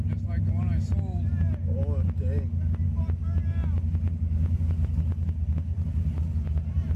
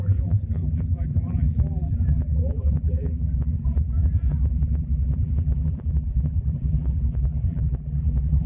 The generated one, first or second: second